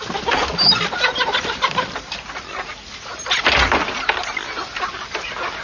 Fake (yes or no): no